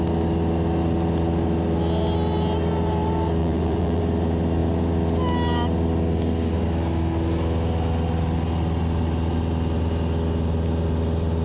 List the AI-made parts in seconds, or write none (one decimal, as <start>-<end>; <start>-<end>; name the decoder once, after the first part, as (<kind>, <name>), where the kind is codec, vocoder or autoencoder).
3.4-4.0 (vocoder, Vocos)